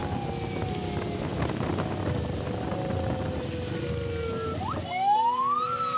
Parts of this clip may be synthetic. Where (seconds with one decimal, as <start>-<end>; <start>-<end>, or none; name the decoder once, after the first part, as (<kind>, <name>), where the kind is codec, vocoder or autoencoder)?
none